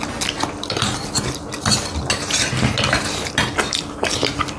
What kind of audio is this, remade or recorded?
recorded